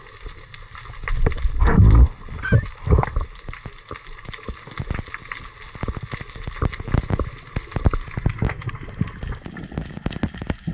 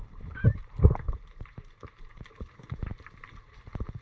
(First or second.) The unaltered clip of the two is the first